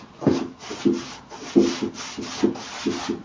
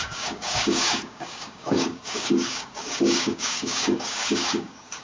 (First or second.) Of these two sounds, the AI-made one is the second